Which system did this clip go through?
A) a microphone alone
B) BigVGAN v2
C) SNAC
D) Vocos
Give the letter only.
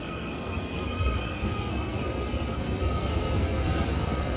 C